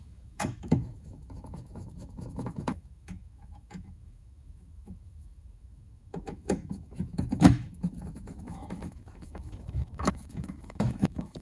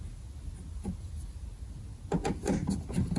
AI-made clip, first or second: first